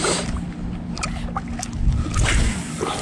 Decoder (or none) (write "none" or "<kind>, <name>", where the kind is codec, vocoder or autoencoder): none